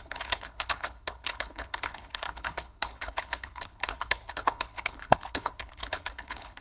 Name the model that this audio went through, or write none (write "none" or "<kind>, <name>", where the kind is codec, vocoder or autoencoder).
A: codec, HILCodec